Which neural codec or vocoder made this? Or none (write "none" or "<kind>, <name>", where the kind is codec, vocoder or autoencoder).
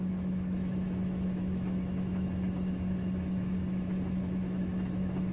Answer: autoencoder, DAC-VAE